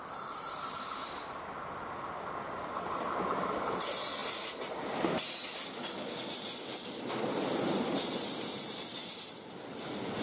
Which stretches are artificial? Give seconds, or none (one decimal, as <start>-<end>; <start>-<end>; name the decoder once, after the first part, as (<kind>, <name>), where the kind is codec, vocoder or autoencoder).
none